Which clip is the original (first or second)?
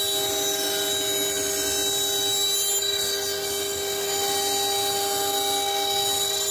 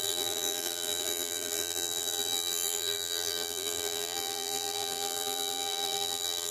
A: first